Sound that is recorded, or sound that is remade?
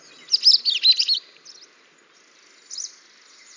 recorded